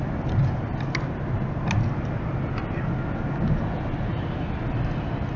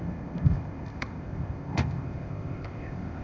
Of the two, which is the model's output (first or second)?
second